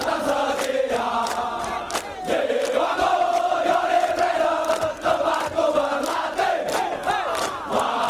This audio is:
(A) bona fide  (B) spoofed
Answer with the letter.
A